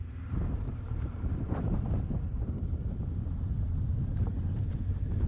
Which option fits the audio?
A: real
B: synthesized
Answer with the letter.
B